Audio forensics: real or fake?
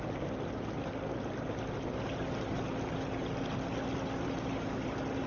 real